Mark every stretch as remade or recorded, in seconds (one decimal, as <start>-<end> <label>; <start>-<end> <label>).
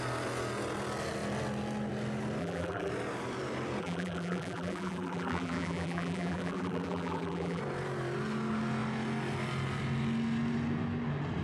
0.0-2.4 recorded; 2.4-2.9 remade; 2.9-3.8 recorded; 3.8-7.6 remade; 7.6-11.4 recorded